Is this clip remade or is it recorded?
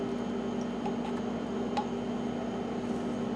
recorded